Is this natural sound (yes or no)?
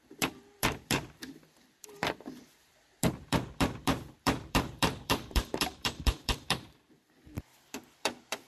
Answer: no